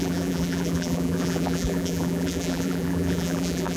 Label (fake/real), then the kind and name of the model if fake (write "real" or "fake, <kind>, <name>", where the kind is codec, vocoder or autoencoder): fake, vocoder, BigVGAN v2